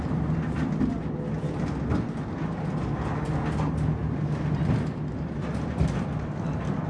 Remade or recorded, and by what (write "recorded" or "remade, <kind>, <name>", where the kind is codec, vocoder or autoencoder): recorded